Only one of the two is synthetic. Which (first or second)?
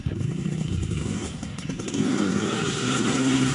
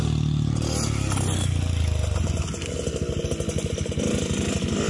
first